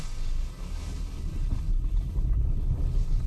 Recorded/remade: remade